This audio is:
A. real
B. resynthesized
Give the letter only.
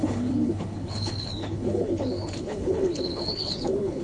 B